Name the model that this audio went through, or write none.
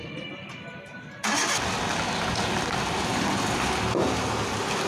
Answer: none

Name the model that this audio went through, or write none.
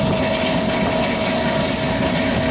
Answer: none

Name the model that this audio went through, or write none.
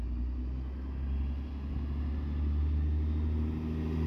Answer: none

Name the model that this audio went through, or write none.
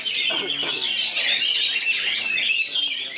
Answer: none